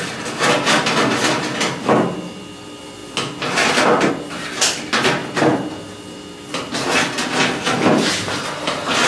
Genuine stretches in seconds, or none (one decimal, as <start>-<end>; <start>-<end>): 0.0-9.1